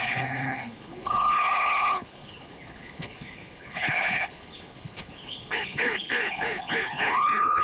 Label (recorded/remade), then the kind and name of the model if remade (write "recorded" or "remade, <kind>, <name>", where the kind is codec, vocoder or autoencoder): remade, codec, HILCodec